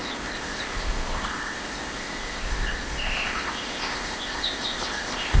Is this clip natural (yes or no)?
no